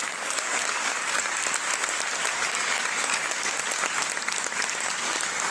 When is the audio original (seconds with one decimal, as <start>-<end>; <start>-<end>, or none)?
1.4-2.3; 3.6-4.8